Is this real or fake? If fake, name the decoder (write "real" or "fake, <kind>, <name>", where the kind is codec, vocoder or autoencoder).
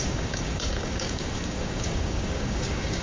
fake, codec, DAC